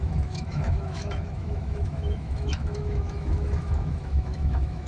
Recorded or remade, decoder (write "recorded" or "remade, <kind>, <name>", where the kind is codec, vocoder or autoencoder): remade, autoencoder, DAC-VAE